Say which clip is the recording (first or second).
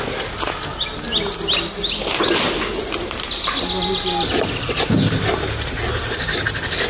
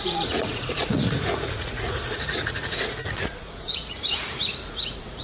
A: first